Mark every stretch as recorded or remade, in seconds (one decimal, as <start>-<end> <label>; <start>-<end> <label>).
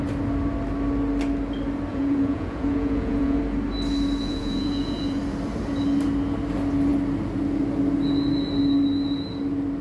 0.0-1.9 recorded; 1.9-3.4 remade; 3.4-4.2 recorded; 4.2-5.2 remade; 5.2-9.8 recorded